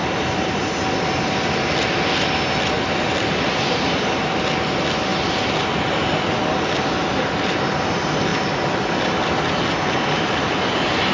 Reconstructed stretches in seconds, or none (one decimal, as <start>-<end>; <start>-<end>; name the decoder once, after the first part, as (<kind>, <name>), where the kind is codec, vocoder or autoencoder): 3.2-5.1 (vocoder, BigVGAN v2); 5.8-8.3